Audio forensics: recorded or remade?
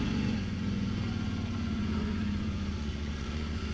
remade